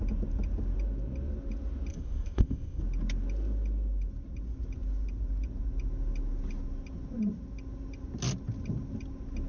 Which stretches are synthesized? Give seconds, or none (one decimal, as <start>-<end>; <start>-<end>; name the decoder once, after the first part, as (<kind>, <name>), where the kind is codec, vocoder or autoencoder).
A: 1.9-2.8 (codec, ZipCodec)